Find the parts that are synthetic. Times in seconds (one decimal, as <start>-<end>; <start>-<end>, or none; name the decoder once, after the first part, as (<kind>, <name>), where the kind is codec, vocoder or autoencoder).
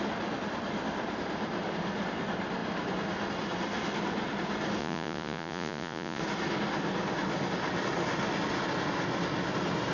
4.8-6.2 (vocoder, Vocos)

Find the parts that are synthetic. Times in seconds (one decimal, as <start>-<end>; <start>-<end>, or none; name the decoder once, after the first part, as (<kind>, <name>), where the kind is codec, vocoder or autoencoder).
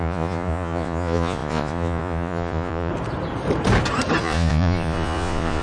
0.0-2.9 (vocoder, Vocos); 4.2-5.6